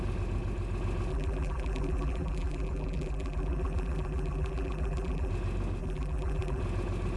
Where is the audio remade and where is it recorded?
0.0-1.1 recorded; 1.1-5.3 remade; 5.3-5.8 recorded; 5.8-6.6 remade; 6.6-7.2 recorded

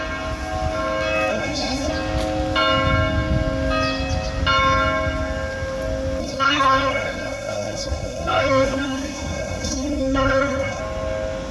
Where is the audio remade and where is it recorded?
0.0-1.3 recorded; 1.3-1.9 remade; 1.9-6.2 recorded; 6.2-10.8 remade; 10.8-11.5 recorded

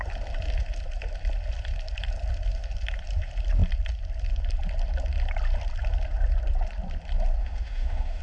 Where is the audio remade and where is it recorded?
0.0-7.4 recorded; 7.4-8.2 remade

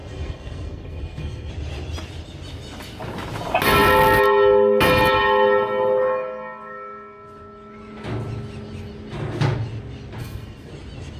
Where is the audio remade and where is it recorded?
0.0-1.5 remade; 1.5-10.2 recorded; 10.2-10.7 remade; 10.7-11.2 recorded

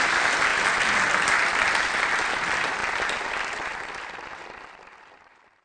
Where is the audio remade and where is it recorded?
0.0-5.6 remade

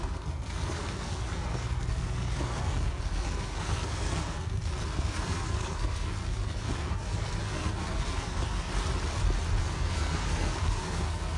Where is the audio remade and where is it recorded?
0.0-8.7 remade; 8.7-9.6 recorded; 9.6-11.4 remade